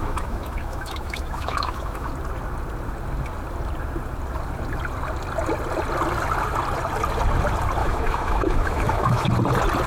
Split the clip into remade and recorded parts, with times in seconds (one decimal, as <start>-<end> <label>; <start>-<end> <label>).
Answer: 0.0-2.1 remade; 2.1-7.8 recorded; 7.8-9.3 remade; 9.3-9.9 recorded